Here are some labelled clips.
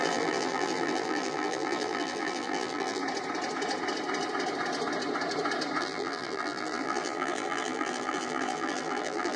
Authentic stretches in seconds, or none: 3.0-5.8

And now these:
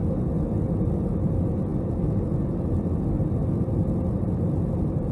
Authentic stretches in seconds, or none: 0.0-5.1

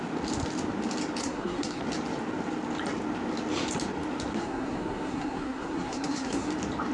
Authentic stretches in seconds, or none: 0.0-1.2; 1.8-4.3; 6.5-6.9

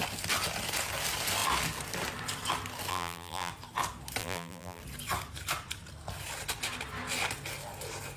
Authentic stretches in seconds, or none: 0.0-2.9; 3.5-4.2; 4.8-8.2

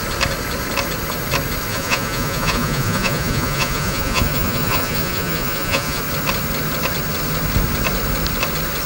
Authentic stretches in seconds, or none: 0.0-1.7; 6.0-8.9

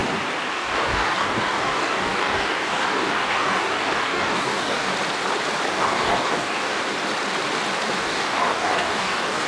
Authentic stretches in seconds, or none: 0.0-0.5; 4.9-5.7; 6.8-8.0